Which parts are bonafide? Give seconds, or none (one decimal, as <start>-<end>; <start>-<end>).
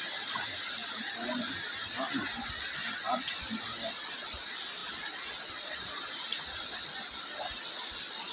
0.8-2.1; 4.8-5.5